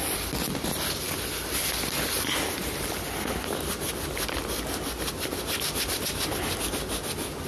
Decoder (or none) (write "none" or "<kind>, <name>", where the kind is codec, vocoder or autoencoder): none